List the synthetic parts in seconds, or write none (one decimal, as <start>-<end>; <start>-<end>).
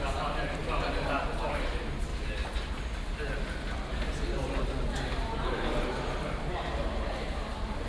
0.0-0.6; 1.2-2.1; 6.8-7.9